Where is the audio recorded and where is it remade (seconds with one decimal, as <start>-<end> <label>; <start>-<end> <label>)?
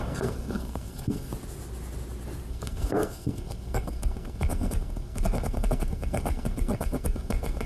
0.0-1.3 remade; 1.3-2.5 recorded; 2.5-7.7 remade